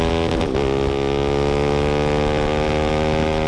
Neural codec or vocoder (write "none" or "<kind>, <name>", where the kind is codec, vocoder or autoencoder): none